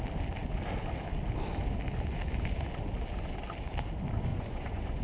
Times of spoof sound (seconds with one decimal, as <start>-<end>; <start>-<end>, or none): 4.3-5.0